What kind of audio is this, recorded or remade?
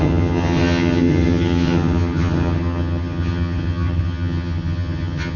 remade